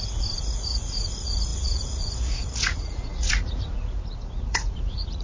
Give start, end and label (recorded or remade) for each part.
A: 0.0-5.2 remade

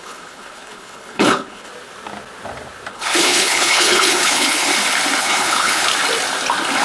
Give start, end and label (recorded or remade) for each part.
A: 0.0-1.7 remade; 1.7-2.9 recorded; 2.9-4.7 remade; 4.7-5.2 recorded; 5.2-5.9 remade; 5.9-6.8 recorded